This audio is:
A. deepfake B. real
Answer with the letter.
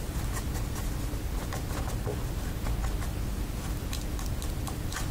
B